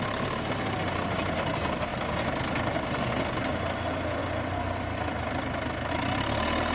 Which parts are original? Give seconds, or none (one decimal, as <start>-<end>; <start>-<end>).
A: 0.0-6.7

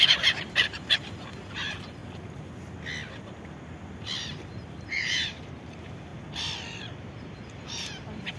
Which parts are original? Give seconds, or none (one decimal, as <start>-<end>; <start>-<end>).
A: 2.0-4.2; 6.1-6.7

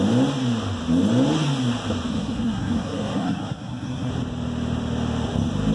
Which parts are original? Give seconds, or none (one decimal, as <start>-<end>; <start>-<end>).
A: 0.0-2.1; 4.1-5.7

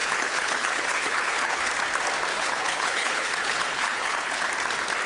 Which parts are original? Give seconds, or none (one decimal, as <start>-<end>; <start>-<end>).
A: 1.7-2.3; 4.5-5.1

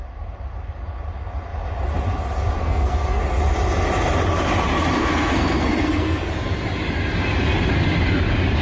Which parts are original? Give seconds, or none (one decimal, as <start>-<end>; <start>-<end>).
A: 0.0-2.6; 3.2-5.0; 6.3-8.6

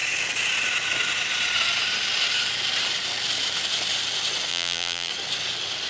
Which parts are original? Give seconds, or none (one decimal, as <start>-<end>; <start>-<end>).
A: 0.0-4.5; 5.1-5.9

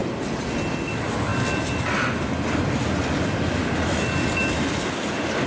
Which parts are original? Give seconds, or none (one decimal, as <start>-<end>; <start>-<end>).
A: 0.0-5.5

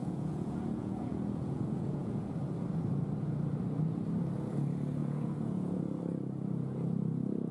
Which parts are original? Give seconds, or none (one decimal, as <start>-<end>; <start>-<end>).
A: 2.3-5.0; 5.8-7.5